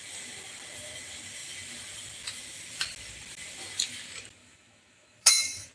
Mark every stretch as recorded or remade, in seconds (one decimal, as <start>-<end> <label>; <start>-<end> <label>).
0.0-4.4 recorded; 4.4-5.7 remade